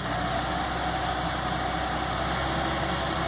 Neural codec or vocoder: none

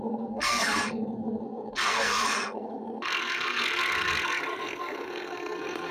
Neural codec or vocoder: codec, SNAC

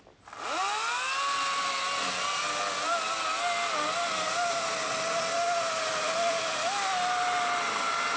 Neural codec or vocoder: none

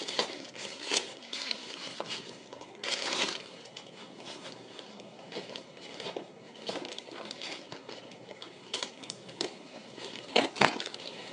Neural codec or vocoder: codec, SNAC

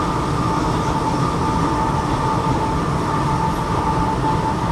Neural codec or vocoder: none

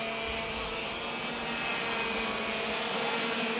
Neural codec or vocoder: none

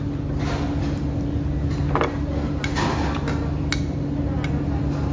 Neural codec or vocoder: none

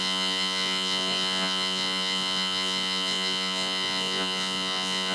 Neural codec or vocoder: vocoder, Vocos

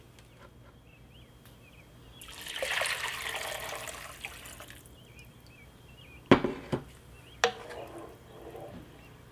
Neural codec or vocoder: none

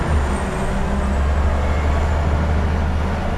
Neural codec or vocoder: none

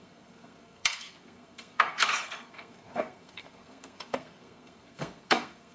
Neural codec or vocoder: codec, SNAC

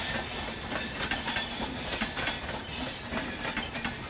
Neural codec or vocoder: none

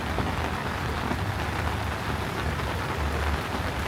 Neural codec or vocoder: none